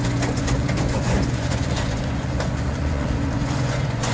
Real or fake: fake